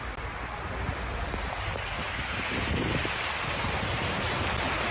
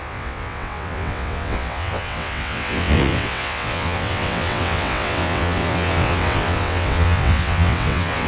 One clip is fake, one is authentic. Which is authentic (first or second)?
first